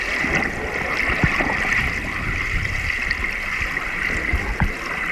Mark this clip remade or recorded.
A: recorded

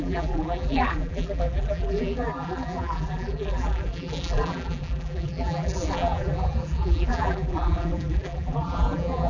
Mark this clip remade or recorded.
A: remade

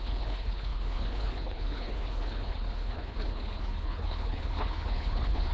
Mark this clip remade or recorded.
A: remade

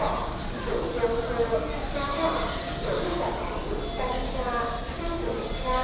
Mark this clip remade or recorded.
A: recorded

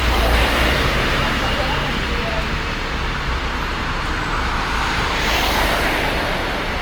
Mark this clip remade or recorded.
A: remade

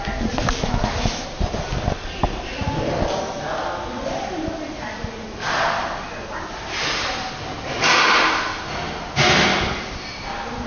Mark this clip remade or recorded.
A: recorded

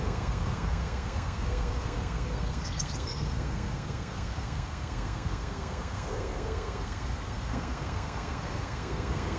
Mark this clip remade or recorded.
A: remade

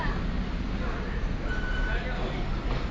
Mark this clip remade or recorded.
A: recorded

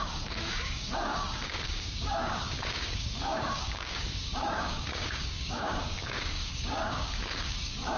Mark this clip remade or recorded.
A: remade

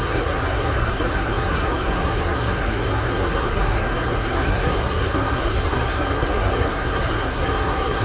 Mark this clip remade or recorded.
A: remade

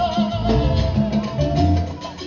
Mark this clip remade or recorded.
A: recorded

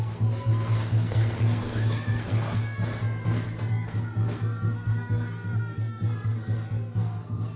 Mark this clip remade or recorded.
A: remade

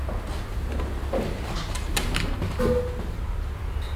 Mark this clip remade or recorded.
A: recorded